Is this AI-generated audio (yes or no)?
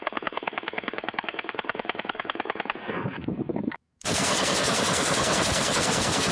yes